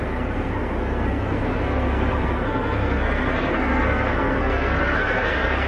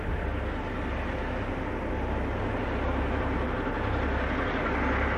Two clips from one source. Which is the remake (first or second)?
first